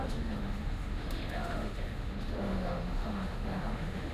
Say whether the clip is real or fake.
fake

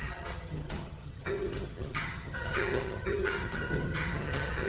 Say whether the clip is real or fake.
fake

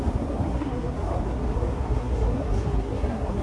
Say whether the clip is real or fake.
fake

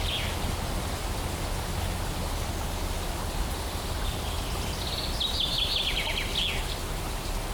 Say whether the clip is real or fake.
real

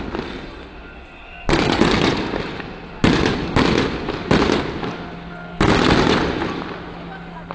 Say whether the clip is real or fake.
real